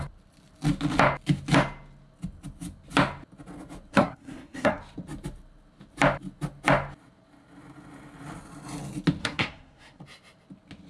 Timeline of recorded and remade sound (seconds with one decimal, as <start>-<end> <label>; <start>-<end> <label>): 0.0-3.9 recorded; 3.9-4.8 remade; 4.8-9.2 recorded; 9.2-10.0 remade; 10.0-10.9 recorded